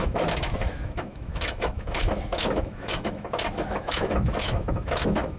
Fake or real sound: fake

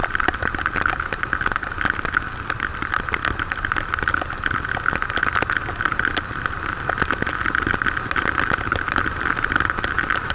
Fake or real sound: real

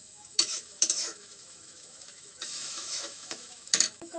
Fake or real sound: fake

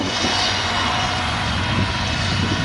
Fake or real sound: fake